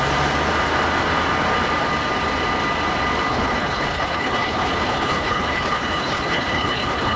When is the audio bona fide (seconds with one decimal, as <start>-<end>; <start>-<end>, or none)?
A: 0.0-3.3